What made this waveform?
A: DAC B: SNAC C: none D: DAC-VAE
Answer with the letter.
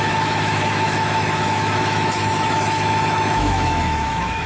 D